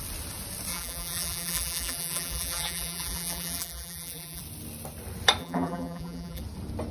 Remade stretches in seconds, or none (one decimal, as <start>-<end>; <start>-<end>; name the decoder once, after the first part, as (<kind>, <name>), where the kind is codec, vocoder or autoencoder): 0.7-4.4 (vocoder, BigVGAN v2); 5.4-6.4